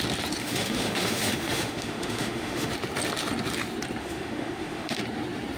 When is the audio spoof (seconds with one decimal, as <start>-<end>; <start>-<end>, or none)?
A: 0.4-2.7; 4.0-5.0